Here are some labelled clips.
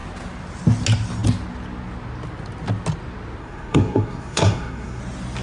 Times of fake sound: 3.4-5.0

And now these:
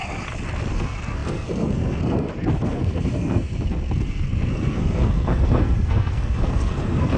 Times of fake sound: 0.7-7.2

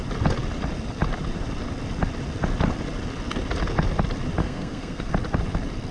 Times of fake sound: 4.4-5.1

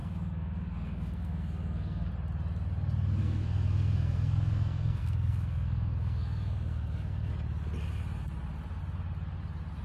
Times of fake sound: 0.0-2.1; 3.2-7.3

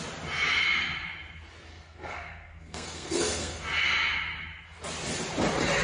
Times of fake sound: 1.7-3.6

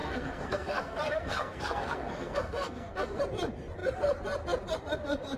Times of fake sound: 0.0-3.2

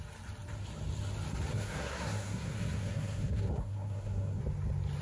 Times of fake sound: 1.5-4.4